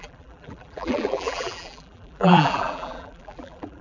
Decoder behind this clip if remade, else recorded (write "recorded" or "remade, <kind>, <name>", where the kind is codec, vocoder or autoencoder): remade, vocoder, BigVGAN v2